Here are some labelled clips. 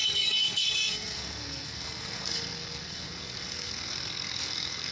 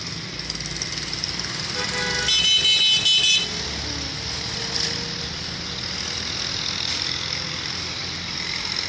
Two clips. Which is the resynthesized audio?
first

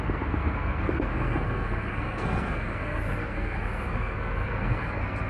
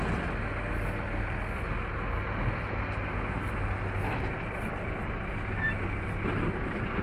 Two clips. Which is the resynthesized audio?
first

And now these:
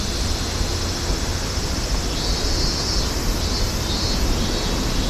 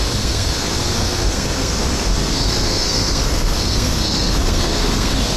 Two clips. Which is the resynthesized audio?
second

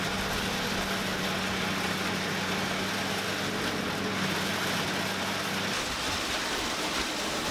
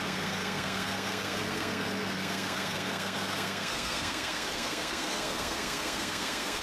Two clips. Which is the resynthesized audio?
second